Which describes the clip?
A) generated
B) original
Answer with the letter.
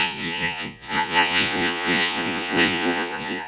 A